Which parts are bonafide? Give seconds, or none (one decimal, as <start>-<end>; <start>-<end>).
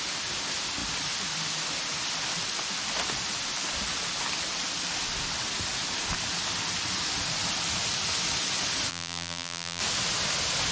0.0-8.9; 9.8-10.7